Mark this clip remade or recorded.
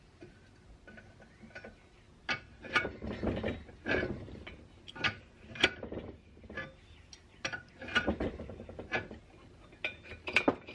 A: recorded